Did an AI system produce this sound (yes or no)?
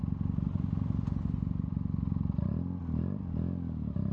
no